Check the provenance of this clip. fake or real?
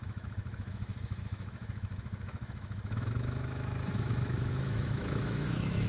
fake